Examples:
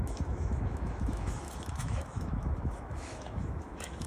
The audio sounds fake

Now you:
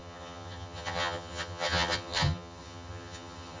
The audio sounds fake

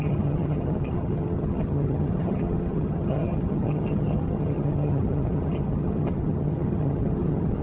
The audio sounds fake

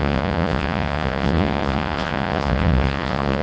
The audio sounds fake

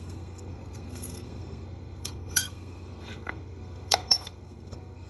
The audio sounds fake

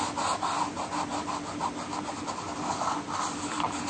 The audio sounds real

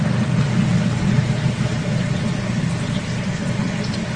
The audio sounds real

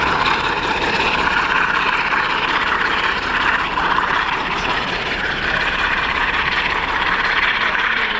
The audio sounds fake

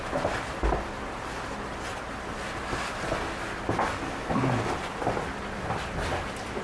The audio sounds real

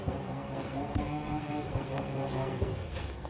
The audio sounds fake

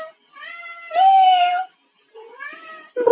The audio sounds real